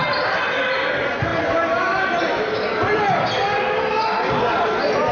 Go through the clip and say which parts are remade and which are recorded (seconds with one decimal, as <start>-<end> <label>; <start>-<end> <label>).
0.0-1.3 recorded; 1.3-2.2 remade; 2.2-5.1 recorded